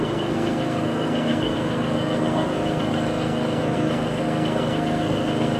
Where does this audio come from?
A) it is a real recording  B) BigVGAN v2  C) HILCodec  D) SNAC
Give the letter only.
D